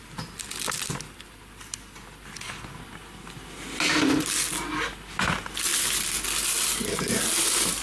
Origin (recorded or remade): recorded